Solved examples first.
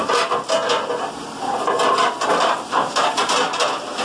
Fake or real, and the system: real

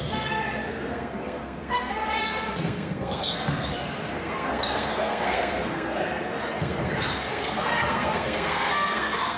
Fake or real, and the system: fake, codec, SNAC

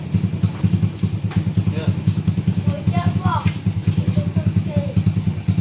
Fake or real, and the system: real